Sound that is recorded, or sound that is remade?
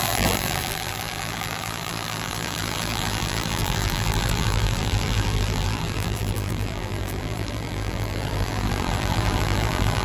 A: remade